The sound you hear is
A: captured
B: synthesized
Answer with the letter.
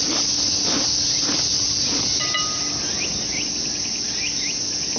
A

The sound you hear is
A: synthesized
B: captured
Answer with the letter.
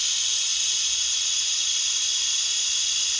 B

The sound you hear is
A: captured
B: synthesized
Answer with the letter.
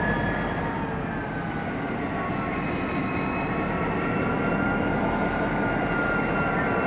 A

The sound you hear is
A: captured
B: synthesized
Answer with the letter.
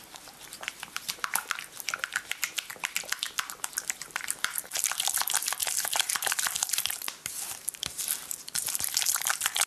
B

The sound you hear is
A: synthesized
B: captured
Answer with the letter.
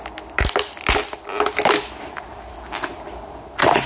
B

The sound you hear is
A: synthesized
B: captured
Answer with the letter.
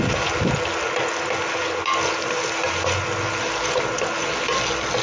B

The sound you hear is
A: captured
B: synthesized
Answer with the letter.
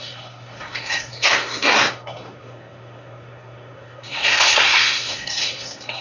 B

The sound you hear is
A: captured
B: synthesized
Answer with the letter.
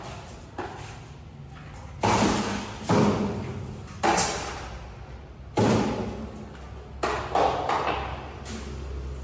A